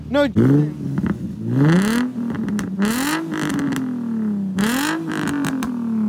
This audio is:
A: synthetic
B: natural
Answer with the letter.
B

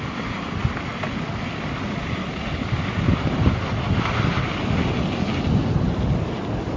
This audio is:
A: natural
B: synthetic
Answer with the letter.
A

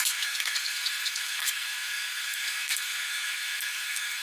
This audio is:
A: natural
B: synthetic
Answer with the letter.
B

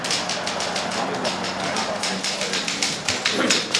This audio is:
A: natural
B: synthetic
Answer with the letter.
A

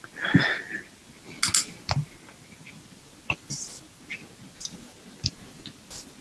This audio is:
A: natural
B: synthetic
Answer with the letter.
A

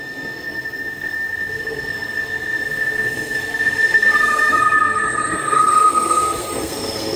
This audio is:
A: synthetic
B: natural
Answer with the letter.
A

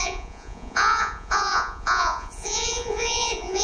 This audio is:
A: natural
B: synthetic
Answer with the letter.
B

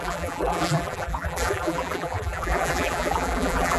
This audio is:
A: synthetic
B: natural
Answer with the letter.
A